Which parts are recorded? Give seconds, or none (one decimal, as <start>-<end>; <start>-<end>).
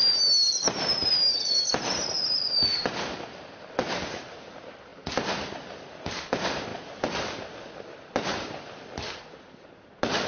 0.0-4.9; 5.9-10.3